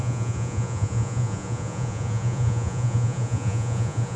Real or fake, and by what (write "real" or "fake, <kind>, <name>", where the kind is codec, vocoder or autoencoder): fake, vocoder, Vocos